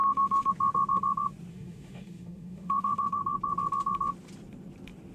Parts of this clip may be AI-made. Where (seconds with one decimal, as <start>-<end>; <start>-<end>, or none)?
0.0-0.5; 1.5-3.2